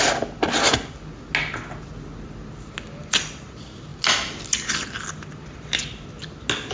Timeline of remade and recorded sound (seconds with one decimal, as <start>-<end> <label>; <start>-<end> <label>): 0.0-6.7 recorded

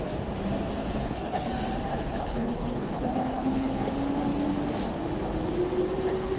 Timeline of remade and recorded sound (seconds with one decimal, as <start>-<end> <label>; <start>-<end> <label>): 0.0-0.8 recorded; 0.8-1.5 remade; 1.5-1.9 recorded; 1.9-3.9 remade; 3.9-6.4 recorded

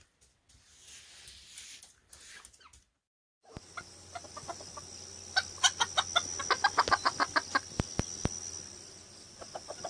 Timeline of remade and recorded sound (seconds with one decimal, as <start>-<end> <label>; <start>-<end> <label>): 0.0-9.9 recorded

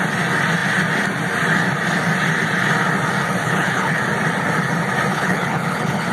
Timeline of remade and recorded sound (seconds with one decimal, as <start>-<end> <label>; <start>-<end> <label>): 0.0-3.4 recorded; 3.4-4.0 remade; 4.0-5.1 recorded; 5.1-6.1 remade

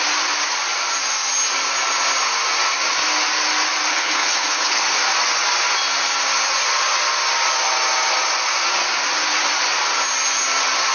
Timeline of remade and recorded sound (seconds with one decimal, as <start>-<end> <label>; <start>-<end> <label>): 0.0-3.9 recorded; 3.9-4.8 remade; 4.8-10.9 recorded